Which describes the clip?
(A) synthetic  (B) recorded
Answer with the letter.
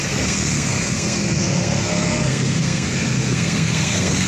A